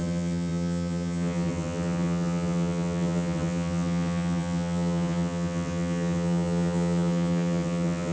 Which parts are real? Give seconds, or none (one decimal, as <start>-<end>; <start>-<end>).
none